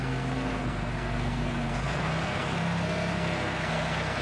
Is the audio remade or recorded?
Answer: remade